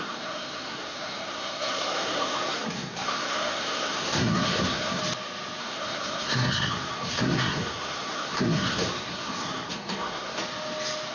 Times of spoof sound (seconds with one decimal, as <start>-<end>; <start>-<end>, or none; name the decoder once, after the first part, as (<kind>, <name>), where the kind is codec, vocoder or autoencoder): 0.0-5.0 (codec, SNAC); 5.6-10.4